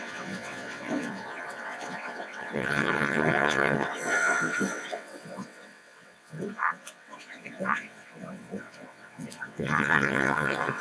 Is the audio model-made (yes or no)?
yes